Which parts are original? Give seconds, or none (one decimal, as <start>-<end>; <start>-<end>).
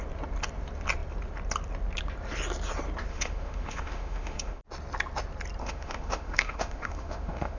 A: 0.0-3.1; 4.6-5.6